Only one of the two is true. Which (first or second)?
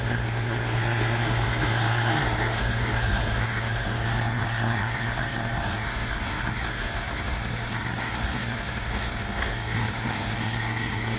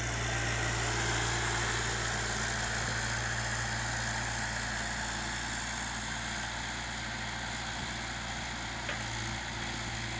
second